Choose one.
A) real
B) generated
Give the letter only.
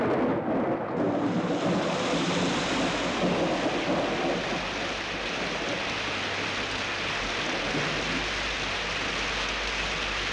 A